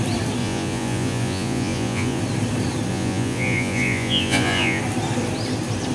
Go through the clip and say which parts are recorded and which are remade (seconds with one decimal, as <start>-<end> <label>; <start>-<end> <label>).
0.0-0.4 recorded; 0.4-2.2 remade; 2.2-2.9 recorded; 2.9-4.8 remade; 4.8-5.9 recorded